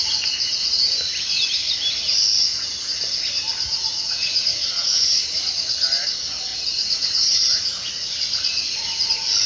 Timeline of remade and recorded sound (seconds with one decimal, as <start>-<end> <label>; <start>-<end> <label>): 0.0-3.9 recorded; 3.9-5.5 remade; 5.5-6.5 recorded; 6.5-7.9 remade; 7.9-9.5 recorded

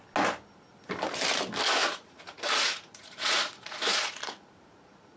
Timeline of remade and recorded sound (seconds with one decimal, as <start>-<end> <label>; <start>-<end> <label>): 0.0-1.8 recorded; 1.8-5.2 remade

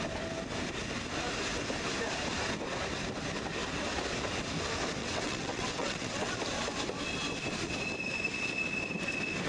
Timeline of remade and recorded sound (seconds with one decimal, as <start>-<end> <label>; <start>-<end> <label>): 0.0-5.0 recorded; 5.0-6.4 remade; 6.4-9.5 recorded

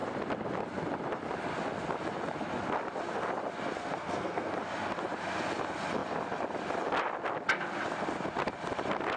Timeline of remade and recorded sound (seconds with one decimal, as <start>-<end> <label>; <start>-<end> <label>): 0.0-3.8 recorded; 3.8-4.5 remade; 4.5-9.2 recorded

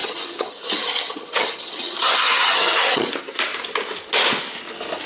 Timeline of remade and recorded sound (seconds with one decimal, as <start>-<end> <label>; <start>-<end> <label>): 0.0-3.1 remade; 3.1-5.1 recorded

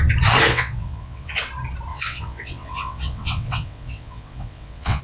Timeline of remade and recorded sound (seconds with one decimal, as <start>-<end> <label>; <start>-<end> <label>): 0.0-0.5 recorded; 0.5-1.4 remade; 1.4-1.9 recorded; 1.9-5.0 remade

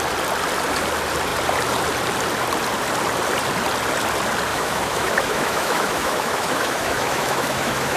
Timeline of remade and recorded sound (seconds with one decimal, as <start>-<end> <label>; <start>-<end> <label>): 0.0-4.5 recorded; 4.5-8.0 remade